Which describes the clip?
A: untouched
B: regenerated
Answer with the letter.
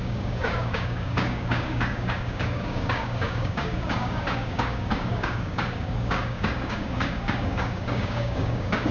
B